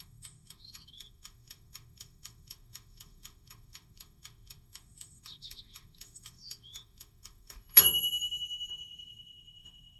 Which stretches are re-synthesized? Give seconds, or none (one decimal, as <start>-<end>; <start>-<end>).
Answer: 0.0-10.0